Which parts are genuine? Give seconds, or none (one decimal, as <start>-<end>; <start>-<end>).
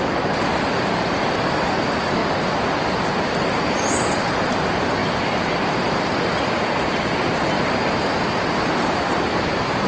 2.2-3.2